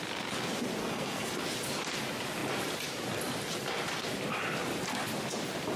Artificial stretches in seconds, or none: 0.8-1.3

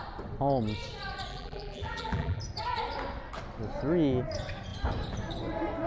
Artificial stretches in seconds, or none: 1.3-2.4

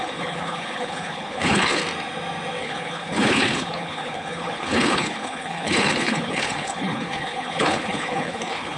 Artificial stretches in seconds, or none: 0.0-1.8; 2.6-8.8

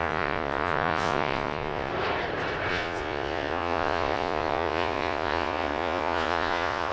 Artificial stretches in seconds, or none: 0.0-1.9; 2.7-6.9

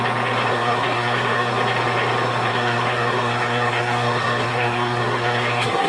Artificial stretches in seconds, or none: 0.5-1.5; 2.5-5.9